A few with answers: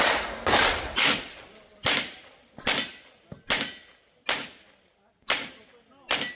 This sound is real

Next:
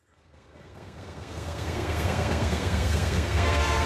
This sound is fake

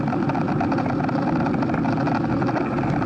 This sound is fake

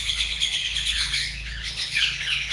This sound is fake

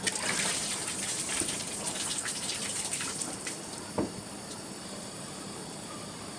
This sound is fake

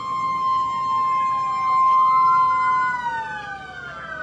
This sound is real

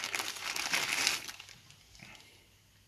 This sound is real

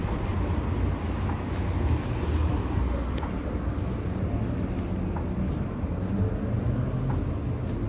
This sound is real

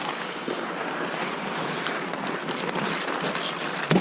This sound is real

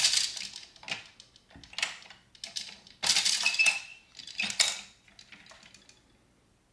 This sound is real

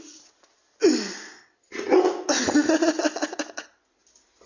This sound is real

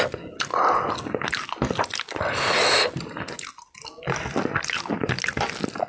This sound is real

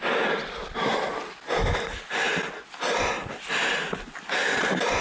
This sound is real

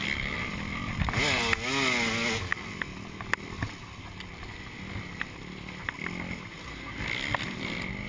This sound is real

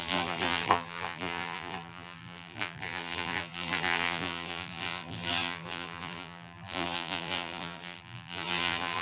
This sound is fake